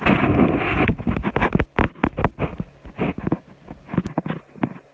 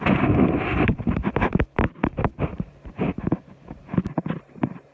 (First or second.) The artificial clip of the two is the second